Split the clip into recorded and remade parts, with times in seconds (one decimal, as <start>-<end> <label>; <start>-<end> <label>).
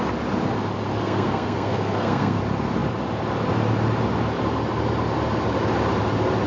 0.0-1.0 recorded; 1.0-2.4 remade; 2.4-6.5 recorded